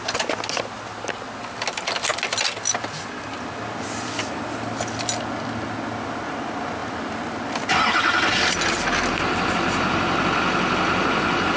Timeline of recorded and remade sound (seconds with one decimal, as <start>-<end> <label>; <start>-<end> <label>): 0.0-6.8 recorded; 6.8-7.5 remade; 7.5-11.6 recorded